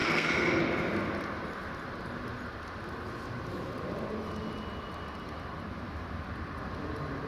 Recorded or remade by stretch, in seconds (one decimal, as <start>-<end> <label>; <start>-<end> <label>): 0.0-0.6 remade; 0.6-7.3 recorded